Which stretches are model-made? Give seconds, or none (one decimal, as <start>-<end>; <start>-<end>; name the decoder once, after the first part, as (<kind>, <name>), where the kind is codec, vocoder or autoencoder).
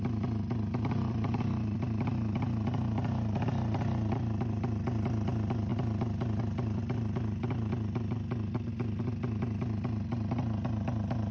none